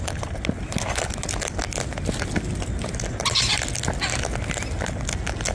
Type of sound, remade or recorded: recorded